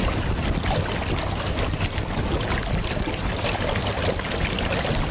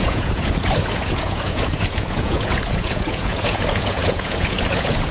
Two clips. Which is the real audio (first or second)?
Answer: first